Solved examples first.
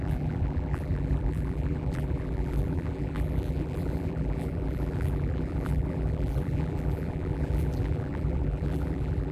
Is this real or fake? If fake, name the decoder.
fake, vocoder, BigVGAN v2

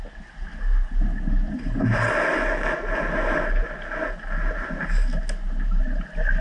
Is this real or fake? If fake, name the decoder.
real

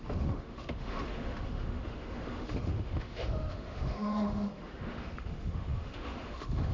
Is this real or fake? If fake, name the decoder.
fake, autoencoder, DAC-VAE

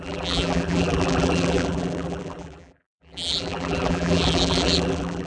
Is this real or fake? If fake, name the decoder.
fake, vocoder, BigVGAN v2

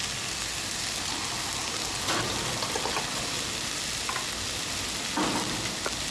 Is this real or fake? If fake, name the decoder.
real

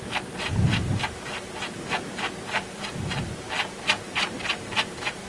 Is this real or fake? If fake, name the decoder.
fake, vocoder, BigVGAN v2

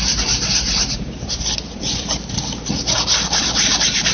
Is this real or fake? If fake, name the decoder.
fake, vocoder, BigVGAN v2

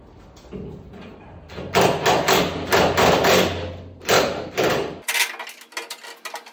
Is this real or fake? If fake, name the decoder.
real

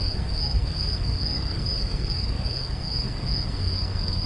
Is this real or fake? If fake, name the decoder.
fake, codec, SNAC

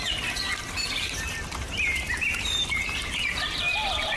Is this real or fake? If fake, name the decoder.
fake, vocoder, BigVGAN v2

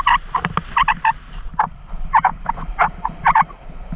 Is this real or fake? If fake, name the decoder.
real